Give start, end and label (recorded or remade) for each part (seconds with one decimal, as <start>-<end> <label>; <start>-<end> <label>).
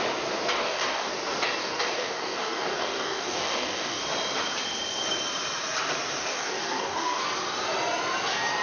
0.0-0.5 recorded; 0.5-1.1 remade; 1.1-1.6 recorded; 1.6-4.0 remade; 4.0-6.2 recorded; 6.2-7.2 remade; 7.2-8.6 recorded